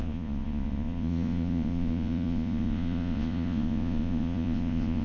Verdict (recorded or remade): remade